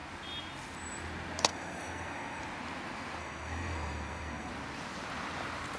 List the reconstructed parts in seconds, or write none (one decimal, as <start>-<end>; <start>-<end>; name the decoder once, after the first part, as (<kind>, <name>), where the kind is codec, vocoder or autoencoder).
1.5-2.4 (codec, SNAC); 3.2-4.5